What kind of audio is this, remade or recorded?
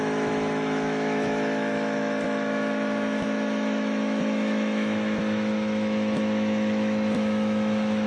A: remade